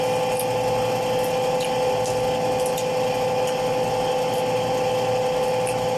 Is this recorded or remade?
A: recorded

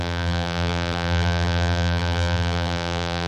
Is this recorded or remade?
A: remade